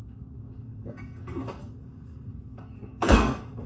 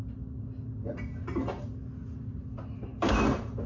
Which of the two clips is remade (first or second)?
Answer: first